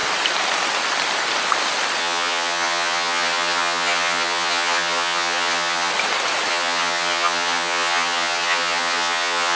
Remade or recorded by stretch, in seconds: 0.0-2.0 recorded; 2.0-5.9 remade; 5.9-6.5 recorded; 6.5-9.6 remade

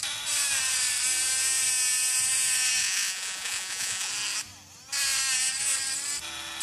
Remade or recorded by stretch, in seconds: 0.0-2.8 recorded; 2.8-4.1 remade; 4.1-6.6 recorded

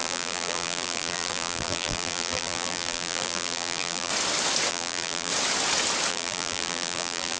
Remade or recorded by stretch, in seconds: 0.0-4.1 remade; 4.1-4.7 recorded; 4.7-5.3 remade; 5.3-6.1 recorded; 6.1-7.4 remade

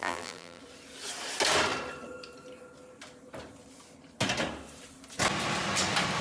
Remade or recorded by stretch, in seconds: 0.0-0.6 remade; 0.6-6.2 recorded

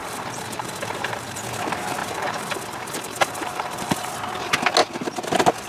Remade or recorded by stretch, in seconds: 0.0-1.4 remade; 1.4-2.0 recorded; 2.0-4.1 remade; 4.1-5.7 recorded

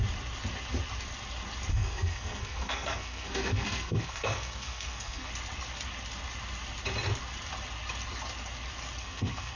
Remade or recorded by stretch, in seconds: 0.0-1.7 recorded; 1.7-5.3 remade; 5.3-9.0 recorded; 9.0-9.6 remade

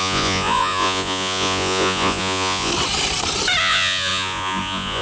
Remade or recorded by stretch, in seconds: 0.0-2.7 remade; 2.7-3.6 recorded; 3.6-5.0 remade